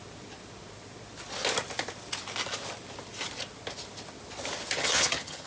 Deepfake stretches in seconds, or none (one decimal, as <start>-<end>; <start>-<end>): 4.8-5.5